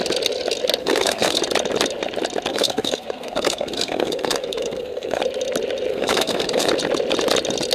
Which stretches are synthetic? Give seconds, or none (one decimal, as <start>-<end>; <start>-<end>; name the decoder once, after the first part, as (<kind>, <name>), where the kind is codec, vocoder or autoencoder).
0.8-1.4 (codec, SNAC); 2.5-5.2; 5.9-6.7